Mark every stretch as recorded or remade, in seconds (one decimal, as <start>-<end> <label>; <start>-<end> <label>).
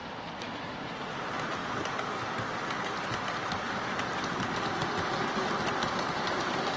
0.0-0.9 remade; 0.9-6.8 recorded